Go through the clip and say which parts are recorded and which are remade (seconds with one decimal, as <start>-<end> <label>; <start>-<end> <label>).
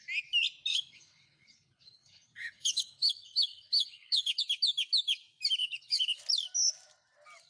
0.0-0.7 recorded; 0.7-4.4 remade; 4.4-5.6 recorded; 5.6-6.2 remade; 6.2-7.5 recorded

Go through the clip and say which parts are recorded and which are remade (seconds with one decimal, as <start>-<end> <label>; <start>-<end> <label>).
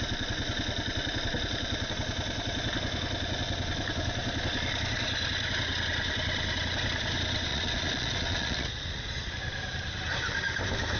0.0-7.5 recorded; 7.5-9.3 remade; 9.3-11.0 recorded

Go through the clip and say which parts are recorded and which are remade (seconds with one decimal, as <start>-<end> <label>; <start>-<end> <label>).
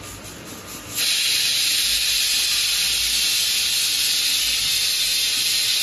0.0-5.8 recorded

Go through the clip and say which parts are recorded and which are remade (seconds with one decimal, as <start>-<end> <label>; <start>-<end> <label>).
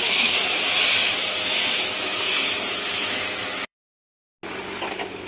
0.0-0.6 remade; 0.6-1.0 recorded; 1.0-4.2 remade; 4.2-5.3 recorded